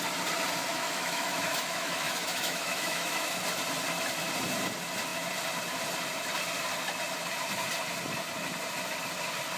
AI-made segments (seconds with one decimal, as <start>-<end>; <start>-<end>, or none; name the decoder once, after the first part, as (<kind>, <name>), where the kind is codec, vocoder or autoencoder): 0.7-3.4 (autoencoder, DAC-VAE)